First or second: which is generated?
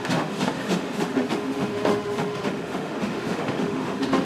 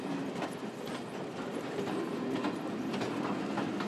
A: first